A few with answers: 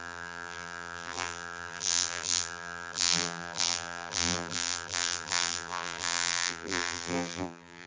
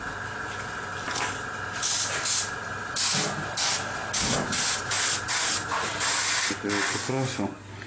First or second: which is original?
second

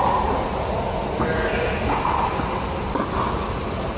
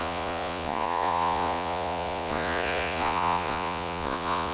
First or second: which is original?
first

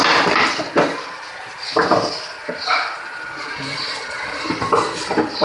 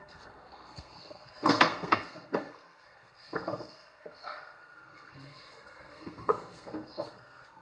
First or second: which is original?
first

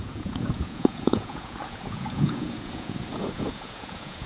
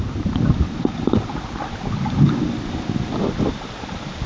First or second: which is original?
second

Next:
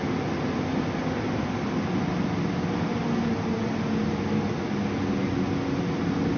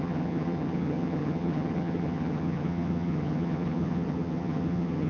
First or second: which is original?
first